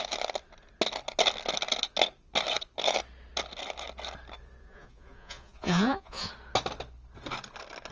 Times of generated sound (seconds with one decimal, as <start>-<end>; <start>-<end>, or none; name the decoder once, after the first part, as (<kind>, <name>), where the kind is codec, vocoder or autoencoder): 4.6-6.3 (vocoder, Vocos)